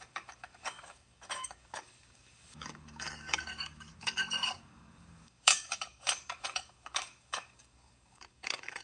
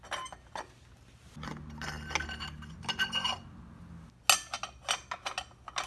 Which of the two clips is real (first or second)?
second